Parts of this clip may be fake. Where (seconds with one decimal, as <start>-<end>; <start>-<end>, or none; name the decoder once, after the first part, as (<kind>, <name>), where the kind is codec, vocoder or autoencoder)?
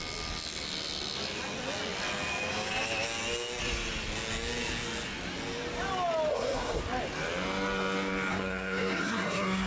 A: 6.3-6.8 (codec, SNAC); 8.3-9.7